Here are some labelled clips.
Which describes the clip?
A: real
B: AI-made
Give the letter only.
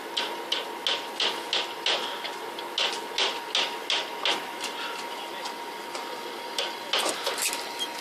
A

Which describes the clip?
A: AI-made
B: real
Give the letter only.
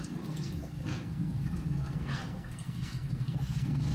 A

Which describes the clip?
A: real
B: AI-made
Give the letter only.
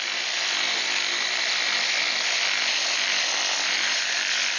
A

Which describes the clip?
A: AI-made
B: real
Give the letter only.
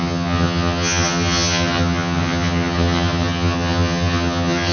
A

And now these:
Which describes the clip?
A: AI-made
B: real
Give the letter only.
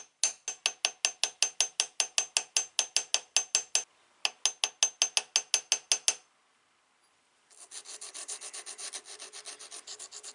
B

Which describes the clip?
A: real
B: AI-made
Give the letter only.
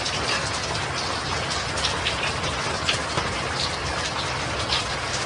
A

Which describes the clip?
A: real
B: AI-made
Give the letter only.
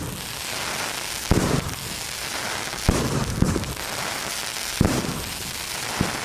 A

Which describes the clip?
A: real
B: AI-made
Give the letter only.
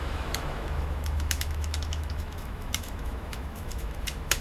B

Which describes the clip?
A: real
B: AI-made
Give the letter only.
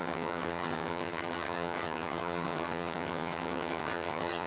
B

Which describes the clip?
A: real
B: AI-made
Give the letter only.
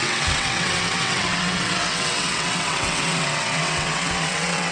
B